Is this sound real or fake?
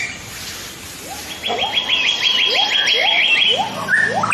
real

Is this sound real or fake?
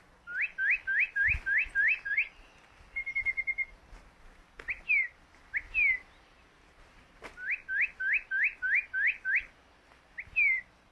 real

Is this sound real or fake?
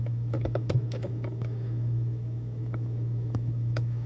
fake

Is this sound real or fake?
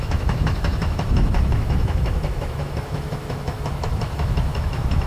fake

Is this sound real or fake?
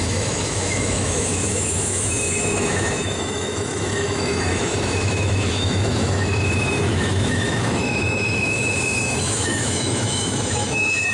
fake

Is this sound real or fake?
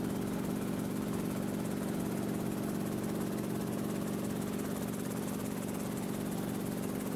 real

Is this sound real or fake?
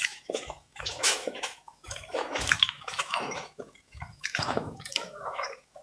fake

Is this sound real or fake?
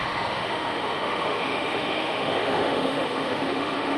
fake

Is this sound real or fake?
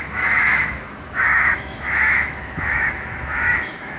fake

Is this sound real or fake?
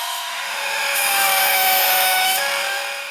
fake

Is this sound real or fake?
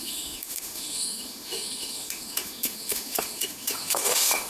fake